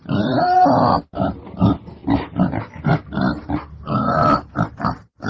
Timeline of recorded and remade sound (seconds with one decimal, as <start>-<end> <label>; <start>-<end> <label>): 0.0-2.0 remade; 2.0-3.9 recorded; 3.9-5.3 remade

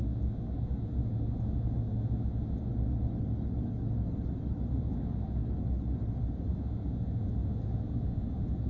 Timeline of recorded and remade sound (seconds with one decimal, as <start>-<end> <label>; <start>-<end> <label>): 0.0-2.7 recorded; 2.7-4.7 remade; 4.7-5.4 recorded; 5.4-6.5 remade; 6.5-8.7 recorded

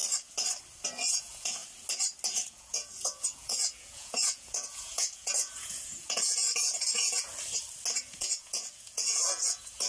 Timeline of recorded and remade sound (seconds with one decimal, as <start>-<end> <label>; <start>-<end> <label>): 0.0-1.1 recorded; 1.1-1.6 remade; 1.6-2.3 recorded; 2.3-7.3 remade; 7.3-8.0 recorded; 8.0-9.9 remade